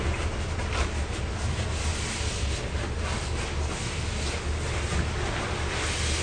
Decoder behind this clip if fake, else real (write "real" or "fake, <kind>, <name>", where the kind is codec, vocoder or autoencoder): real